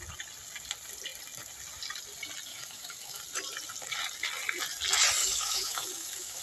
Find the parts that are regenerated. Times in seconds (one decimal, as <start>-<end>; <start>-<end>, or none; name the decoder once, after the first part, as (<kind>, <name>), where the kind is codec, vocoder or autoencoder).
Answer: 2.5-3.2 (autoencoder, DAC-VAE); 5.2-6.4

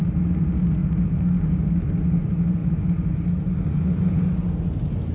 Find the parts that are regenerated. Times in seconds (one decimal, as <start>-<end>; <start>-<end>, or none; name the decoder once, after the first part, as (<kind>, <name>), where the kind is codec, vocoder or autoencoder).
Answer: none

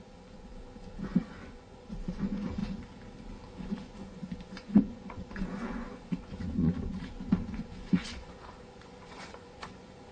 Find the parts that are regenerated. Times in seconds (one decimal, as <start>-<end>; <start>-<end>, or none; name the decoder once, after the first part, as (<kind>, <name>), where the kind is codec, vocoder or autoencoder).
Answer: 0.0-2.6 (vocoder, Vocos); 3.6-10.1

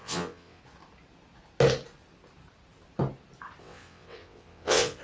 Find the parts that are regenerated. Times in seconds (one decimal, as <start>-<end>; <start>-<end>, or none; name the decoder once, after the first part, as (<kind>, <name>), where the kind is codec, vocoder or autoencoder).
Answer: 0.0-0.6 (vocoder, WaveNeXt); 3.6-5.0